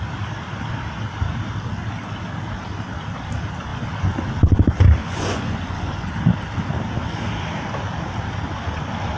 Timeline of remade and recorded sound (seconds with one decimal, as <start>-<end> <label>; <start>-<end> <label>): 0.0-5.0 recorded; 5.0-6.1 remade; 6.1-9.2 recorded